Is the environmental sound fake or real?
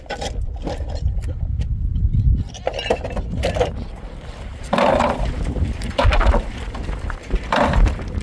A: fake